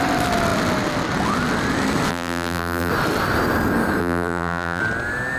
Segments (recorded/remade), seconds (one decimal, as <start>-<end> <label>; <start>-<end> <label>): 0.0-2.1 recorded; 2.1-2.9 remade; 2.9-4.0 recorded; 4.0-4.8 remade; 4.8-5.4 recorded